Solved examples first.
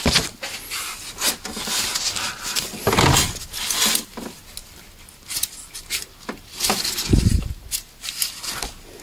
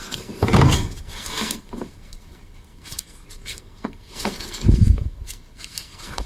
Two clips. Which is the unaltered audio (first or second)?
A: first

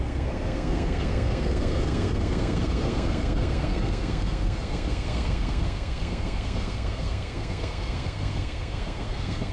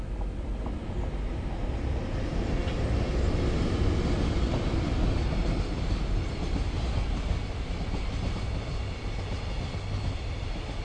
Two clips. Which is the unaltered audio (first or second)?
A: second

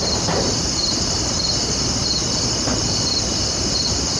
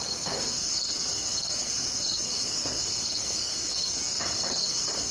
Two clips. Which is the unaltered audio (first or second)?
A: first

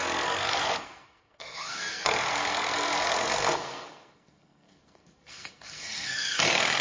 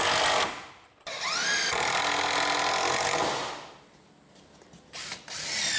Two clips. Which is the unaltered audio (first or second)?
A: second